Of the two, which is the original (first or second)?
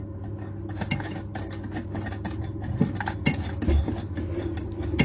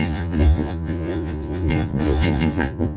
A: first